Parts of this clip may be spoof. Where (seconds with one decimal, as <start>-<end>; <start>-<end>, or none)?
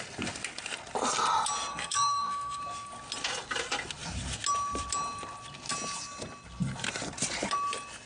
1.7-2.6